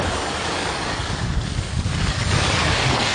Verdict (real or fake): fake